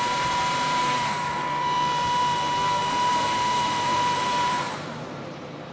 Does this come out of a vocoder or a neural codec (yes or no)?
yes